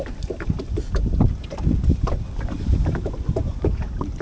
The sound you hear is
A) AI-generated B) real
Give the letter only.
B